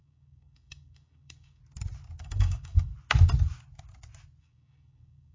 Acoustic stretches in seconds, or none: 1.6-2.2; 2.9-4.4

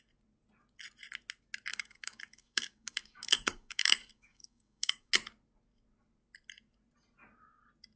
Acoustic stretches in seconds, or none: 0.0-1.7; 5.1-8.0

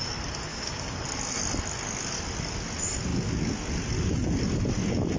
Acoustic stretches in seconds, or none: 0.0-0.5; 1.0-5.2

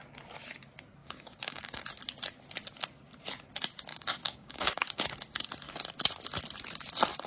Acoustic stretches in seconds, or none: 0.0-1.0; 1.8-3.9; 5.5-7.3

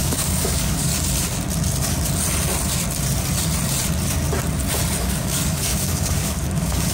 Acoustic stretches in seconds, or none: 0.9-5.0

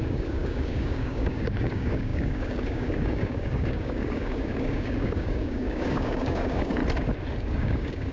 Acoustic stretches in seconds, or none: 6.8-7.4

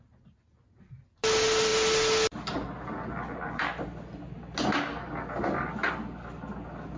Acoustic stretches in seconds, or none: 0.0-7.0